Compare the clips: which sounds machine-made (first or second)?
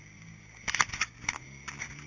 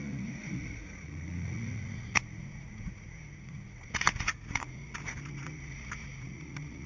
second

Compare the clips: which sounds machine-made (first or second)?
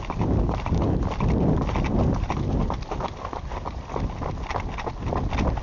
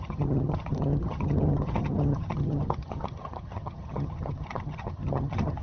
second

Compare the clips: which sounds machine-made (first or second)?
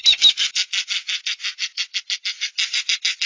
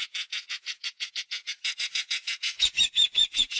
second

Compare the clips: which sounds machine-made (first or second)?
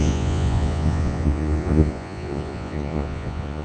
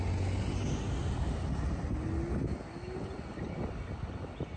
first